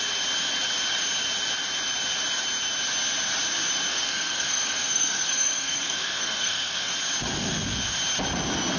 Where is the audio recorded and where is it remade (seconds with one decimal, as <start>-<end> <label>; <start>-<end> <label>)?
0.0-3.9 recorded; 3.9-6.9 remade; 6.9-8.8 recorded